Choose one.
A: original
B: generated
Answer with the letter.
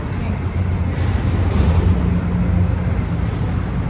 A